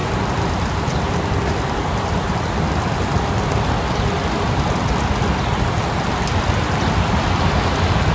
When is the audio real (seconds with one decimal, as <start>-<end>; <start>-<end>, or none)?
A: 0.0-8.1

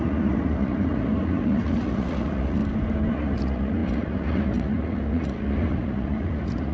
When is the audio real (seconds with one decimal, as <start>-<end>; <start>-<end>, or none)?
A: 2.6-3.1

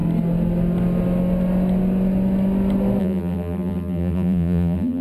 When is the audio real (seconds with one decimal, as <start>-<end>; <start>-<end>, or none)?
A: 0.0-3.0

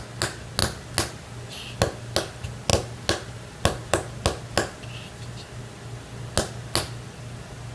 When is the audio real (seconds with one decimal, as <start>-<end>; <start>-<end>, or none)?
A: 0.0-7.7

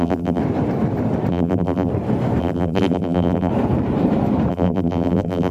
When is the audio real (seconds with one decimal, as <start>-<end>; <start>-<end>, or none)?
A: 0.4-1.3; 1.9-2.4; 3.5-4.5

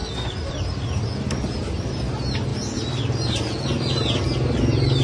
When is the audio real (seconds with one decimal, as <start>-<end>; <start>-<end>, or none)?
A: 0.0-5.0

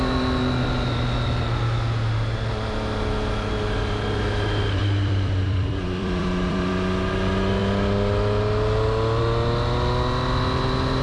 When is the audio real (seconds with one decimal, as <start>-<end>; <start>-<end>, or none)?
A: 0.0-4.8; 6.7-11.0

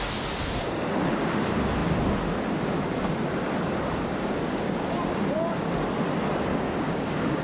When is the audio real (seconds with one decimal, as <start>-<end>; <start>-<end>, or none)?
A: 0.0-6.5